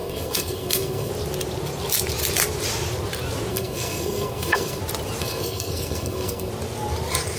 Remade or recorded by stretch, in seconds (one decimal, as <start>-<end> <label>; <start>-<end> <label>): 0.0-1.1 remade; 1.1-3.5 recorded; 3.5-4.8 remade; 4.8-5.2 recorded; 5.2-6.5 remade; 6.5-7.4 recorded